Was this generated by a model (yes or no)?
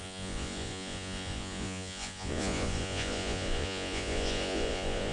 yes